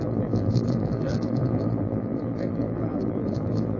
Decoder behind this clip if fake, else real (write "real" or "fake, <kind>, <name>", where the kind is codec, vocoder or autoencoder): fake, vocoder, BigVGAN v2